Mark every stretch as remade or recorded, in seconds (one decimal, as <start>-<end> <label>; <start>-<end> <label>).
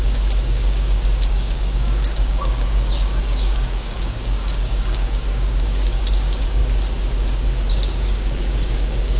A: 0.0-6.6 remade; 6.6-7.7 recorded; 7.7-9.2 remade